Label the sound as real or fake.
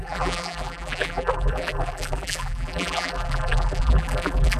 fake